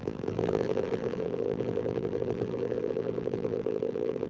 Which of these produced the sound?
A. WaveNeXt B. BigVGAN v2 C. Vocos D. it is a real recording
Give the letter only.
B